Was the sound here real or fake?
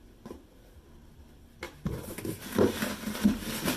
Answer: real